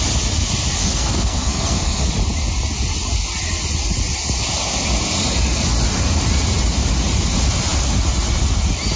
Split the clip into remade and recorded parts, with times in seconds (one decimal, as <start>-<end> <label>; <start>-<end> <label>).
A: 0.0-0.8 recorded; 0.8-2.1 remade; 2.1-9.0 recorded